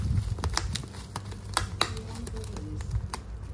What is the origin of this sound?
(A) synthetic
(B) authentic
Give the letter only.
B